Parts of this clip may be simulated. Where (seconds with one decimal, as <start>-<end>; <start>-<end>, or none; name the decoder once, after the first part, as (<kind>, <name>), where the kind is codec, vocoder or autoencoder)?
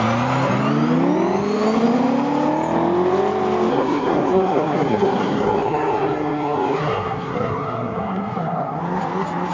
3.7-8.8 (codec, SNAC)